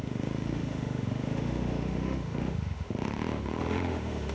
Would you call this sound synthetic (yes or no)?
yes